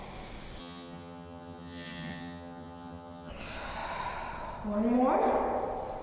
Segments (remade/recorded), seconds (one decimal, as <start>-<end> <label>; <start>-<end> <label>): 0.0-0.6 recorded; 0.6-3.3 remade; 3.3-6.0 recorded